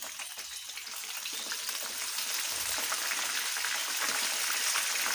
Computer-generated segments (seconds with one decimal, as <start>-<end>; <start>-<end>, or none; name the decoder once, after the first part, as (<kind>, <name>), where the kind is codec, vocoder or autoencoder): 1.0-3.1 (vocoder, BigVGAN v2); 3.8-4.4